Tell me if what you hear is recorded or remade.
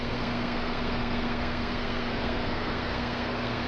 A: remade